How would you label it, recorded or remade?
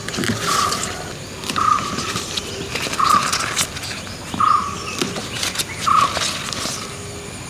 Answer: recorded